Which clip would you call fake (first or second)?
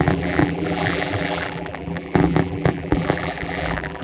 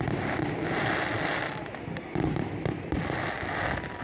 first